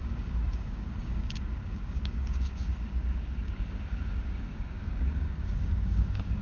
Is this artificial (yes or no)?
yes